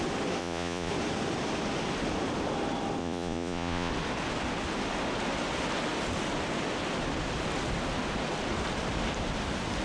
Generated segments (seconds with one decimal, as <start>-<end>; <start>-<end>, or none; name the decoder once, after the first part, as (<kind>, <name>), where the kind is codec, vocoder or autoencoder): 0.4-0.9 (vocoder, Vocos); 3.0-3.9

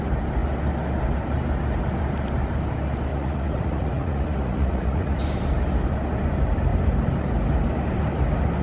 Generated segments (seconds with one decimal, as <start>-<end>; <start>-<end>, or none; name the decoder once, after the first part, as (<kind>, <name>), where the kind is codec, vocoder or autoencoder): 3.1-5.2 (vocoder, Vocos)

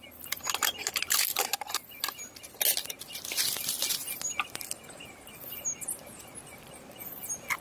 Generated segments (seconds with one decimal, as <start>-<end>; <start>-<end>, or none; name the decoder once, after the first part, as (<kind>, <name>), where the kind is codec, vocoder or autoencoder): none

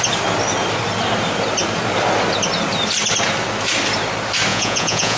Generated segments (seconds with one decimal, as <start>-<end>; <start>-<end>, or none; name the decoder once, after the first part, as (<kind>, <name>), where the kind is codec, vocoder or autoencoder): 4.5-5.2 (vocoder, Vocos)

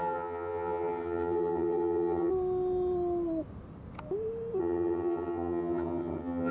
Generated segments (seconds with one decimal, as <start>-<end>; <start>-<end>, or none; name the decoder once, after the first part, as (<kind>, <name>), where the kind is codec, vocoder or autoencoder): 0.0-2.3 (vocoder, HiFi-GAN); 4.6-6.5